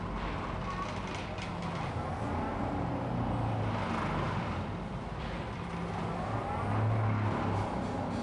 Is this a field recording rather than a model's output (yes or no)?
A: yes